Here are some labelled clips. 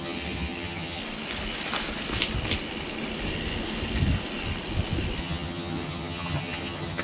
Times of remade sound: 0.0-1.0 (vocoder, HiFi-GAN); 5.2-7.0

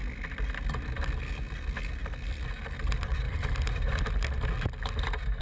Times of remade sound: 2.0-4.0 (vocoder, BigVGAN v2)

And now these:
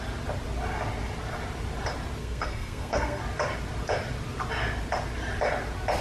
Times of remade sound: 2.2-3.2 (codec, SNAC)

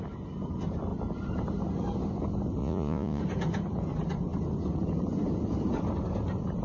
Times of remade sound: 2.6-3.2 (vocoder, Vocos)